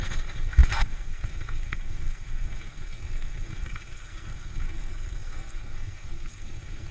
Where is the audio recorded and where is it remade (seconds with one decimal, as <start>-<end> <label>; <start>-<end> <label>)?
0.0-6.9 remade